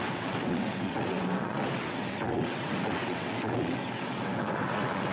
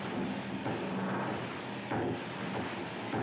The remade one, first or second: first